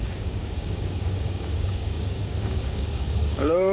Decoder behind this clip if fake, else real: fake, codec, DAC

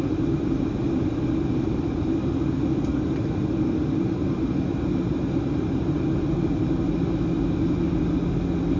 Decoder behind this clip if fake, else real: real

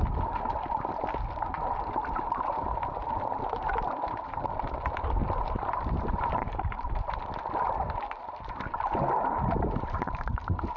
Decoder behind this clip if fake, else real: real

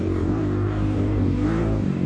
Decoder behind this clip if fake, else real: fake, codec, DAC